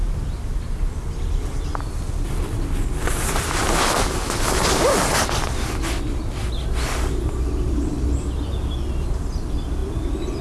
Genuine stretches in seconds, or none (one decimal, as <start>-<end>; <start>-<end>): 0.0-10.4